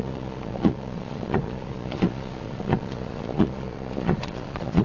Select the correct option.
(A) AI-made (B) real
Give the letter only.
A